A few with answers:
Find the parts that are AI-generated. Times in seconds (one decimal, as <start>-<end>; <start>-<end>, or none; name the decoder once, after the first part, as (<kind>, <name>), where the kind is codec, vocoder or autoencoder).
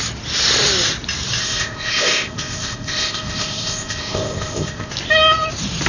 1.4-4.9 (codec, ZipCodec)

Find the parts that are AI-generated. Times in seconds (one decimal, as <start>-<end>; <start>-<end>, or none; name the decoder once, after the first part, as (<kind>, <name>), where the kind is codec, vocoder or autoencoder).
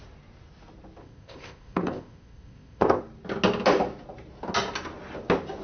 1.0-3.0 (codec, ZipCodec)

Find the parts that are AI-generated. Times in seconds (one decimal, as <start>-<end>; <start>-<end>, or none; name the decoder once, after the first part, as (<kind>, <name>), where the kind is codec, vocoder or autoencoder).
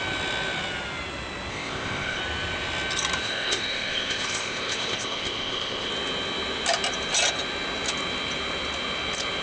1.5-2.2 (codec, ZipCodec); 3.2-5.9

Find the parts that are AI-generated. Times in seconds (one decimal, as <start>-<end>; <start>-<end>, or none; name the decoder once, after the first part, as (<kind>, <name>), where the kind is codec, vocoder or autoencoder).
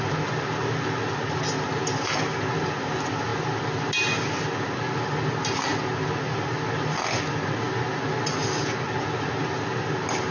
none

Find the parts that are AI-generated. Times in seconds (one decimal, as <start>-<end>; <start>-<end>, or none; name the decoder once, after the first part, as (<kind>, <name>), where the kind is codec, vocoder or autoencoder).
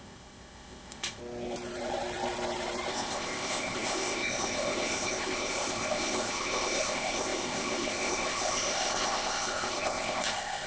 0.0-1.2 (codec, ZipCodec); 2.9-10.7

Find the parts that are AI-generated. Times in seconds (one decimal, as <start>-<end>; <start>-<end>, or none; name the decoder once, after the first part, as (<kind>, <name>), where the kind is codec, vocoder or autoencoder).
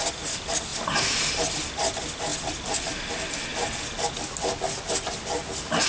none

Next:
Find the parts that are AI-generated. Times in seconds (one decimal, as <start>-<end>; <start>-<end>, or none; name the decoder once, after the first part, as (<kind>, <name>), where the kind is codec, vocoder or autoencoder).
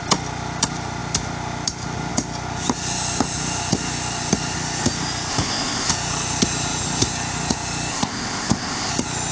5.3-5.9 (codec, ZipCodec); 7.9-8.9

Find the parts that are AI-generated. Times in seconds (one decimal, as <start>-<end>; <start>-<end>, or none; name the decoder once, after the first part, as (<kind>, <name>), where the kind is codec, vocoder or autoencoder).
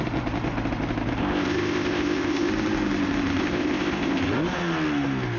1.2-2.5 (codec, ZipCodec); 3.4-4.2